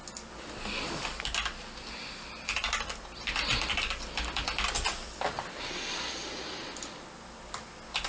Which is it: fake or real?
real